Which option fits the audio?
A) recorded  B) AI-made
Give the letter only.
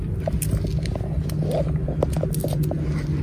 A